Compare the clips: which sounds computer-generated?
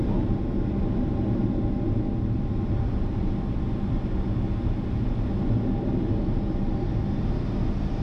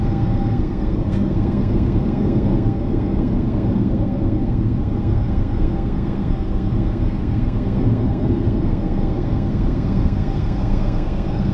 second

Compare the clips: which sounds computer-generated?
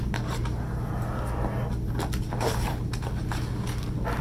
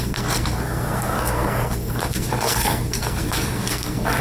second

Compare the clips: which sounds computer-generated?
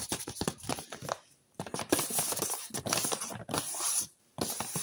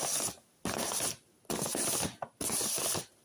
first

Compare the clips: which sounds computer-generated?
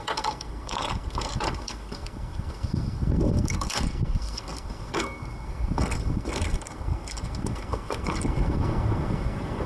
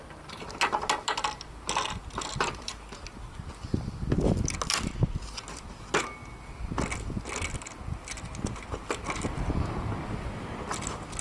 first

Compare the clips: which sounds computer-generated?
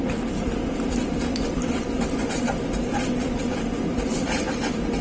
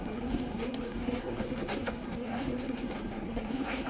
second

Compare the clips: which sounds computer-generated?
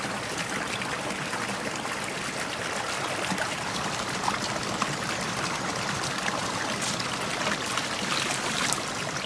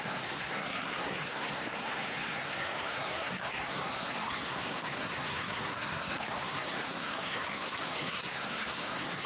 second